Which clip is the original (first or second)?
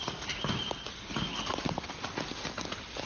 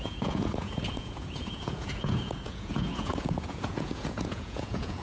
first